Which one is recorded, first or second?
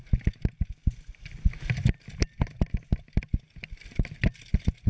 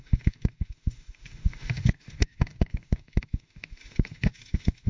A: first